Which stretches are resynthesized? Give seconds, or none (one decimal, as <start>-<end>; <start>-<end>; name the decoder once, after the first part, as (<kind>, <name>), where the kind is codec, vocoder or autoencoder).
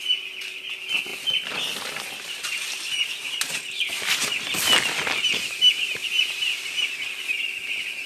1.1-3.1 (vocoder, BigVGAN v2); 6.0-7.1